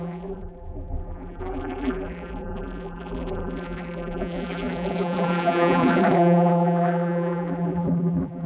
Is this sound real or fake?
fake